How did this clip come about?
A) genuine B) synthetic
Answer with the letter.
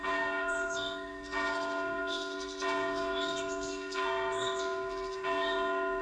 B